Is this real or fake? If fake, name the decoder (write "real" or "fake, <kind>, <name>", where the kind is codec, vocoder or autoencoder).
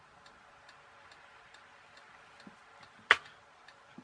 real